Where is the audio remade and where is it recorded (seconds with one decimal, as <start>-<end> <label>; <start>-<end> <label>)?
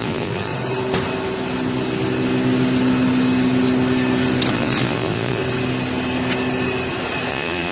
0.0-0.5 remade; 0.5-4.5 recorded; 4.5-5.4 remade; 5.4-7.3 recorded; 7.3-7.7 remade